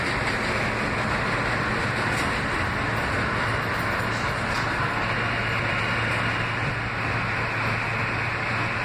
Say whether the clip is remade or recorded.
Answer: recorded